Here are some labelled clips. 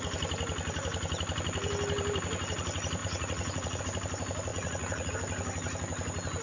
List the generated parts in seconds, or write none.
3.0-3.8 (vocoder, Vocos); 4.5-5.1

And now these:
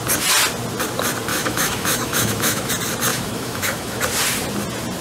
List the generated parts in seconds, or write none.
1.3-2.7 (autoencoder, DAC-VAE); 3.1-4.0

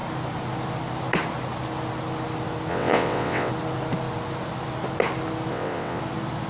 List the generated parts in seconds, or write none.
2.7-3.5 (vocoder, WaveNeXt); 5.5-6.0

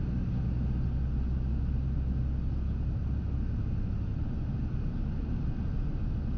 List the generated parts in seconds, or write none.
none

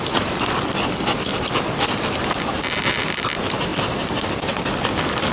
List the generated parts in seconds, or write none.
none